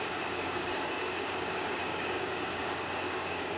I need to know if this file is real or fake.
fake